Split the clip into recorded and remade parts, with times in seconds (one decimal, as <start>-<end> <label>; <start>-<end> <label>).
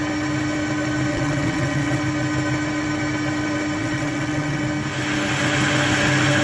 0.0-1.1 recorded; 1.1-2.0 remade; 2.0-3.8 recorded; 3.8-4.6 remade; 4.6-6.4 recorded